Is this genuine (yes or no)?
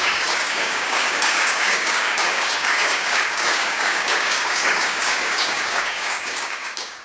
no